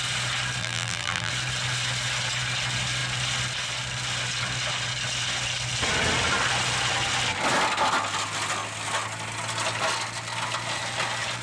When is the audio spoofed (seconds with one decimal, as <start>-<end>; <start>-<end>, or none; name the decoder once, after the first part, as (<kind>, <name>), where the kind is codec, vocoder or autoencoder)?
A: 0.6-1.3 (vocoder, BigVGAN v2)